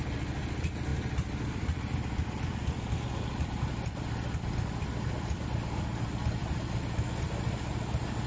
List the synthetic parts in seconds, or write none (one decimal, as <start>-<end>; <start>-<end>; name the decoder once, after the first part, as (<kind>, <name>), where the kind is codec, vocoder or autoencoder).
0.9-3.6 (vocoder, BigVGAN v2)